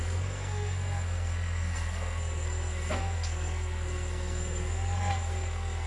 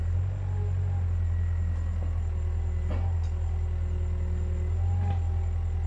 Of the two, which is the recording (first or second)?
second